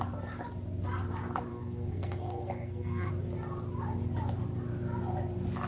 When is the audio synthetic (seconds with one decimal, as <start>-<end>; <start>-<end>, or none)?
1.5-3.1